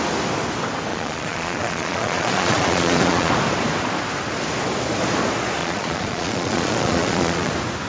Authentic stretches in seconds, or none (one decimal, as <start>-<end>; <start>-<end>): 0.0-0.9; 3.3-5.6; 7.5-7.9